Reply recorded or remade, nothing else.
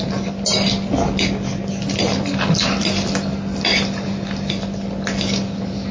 recorded